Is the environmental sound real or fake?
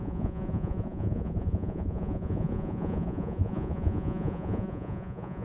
fake